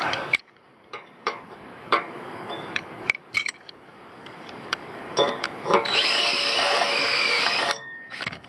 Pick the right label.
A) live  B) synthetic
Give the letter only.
B